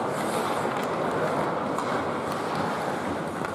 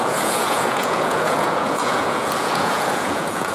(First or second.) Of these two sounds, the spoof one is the second